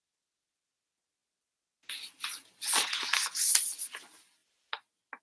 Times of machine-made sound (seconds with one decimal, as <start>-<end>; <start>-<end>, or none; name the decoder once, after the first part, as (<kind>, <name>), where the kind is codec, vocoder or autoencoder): none